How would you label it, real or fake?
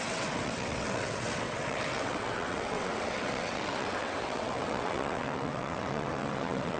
fake